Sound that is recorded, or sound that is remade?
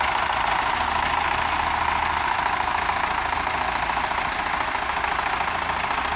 recorded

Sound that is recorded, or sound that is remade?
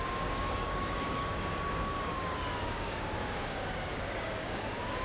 remade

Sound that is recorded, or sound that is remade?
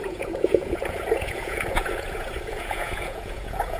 remade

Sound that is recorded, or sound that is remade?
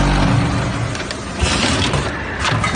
recorded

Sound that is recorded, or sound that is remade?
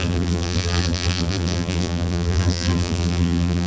remade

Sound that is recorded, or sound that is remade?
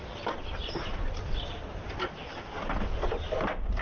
recorded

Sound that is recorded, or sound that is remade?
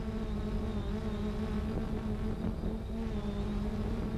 recorded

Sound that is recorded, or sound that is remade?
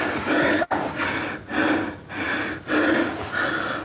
recorded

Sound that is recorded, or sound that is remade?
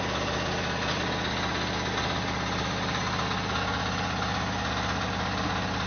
recorded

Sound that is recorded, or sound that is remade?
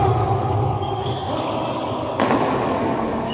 remade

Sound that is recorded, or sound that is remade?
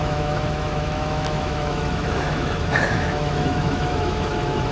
remade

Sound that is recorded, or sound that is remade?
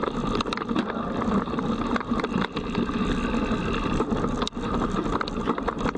recorded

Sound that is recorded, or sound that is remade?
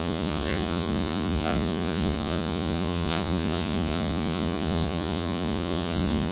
remade